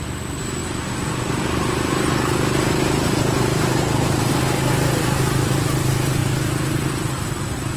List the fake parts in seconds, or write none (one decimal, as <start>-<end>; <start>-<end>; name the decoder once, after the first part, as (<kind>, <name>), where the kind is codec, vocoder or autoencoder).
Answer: 0.6-4.3 (vocoder, BigVGAN v2)